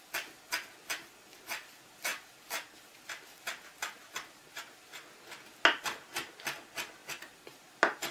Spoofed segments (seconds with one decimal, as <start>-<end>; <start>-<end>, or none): none